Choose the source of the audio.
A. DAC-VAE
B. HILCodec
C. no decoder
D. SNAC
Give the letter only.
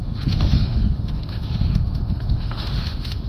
A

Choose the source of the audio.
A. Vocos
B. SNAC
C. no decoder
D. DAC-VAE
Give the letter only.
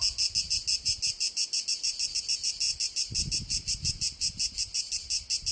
C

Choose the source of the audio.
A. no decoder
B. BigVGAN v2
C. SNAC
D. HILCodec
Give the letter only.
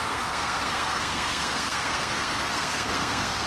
C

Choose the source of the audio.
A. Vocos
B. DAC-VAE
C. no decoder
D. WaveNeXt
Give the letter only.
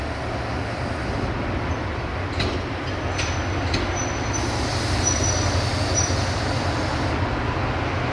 C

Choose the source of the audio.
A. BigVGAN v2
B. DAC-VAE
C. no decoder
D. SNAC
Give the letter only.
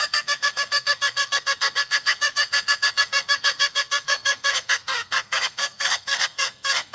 D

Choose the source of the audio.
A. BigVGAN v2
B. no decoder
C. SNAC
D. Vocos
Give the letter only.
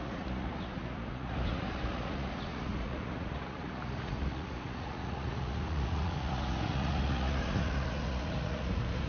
D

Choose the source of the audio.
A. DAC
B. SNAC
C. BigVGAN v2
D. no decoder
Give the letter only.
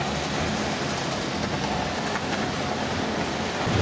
D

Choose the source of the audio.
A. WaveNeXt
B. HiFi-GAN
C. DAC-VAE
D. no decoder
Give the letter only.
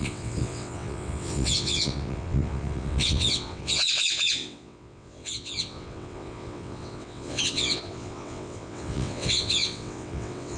A